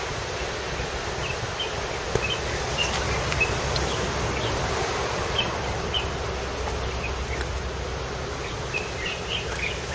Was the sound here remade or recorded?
recorded